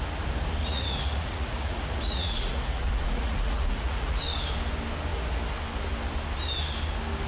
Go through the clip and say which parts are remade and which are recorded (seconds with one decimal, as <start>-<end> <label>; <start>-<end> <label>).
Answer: 0.0-0.6 recorded; 0.6-4.2 remade; 4.2-7.3 recorded

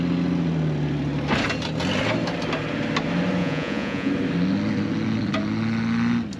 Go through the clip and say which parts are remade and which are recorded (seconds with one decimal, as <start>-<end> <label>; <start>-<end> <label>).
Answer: 0.0-3.4 recorded; 3.4-4.1 remade; 4.1-6.4 recorded

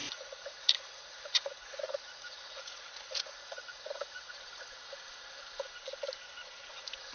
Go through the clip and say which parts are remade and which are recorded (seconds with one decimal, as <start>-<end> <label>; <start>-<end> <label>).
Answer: 0.0-4.3 remade; 4.3-7.1 recorded

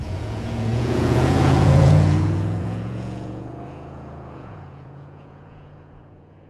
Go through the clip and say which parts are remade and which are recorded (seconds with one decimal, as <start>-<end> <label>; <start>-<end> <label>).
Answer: 0.0-6.5 remade

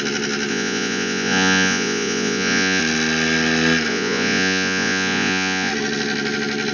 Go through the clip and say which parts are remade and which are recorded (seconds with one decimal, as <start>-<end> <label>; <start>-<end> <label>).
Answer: 0.0-0.5 recorded; 0.5-2.8 remade; 2.8-3.9 recorded; 3.9-5.7 remade; 5.7-6.7 recorded

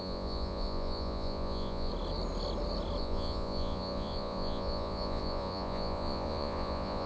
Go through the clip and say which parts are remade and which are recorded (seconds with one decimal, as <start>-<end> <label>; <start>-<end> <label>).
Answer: 0.0-1.9 remade; 1.9-3.0 recorded; 3.0-7.1 remade